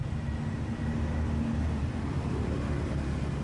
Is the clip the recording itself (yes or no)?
yes